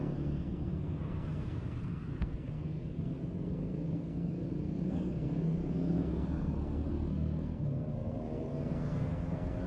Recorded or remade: remade